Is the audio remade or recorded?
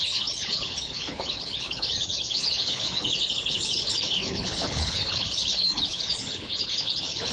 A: remade